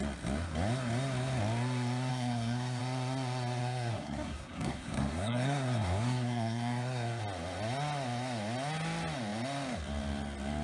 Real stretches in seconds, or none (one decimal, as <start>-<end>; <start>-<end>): 0.0-2.1; 2.8-3.6; 7.2-10.6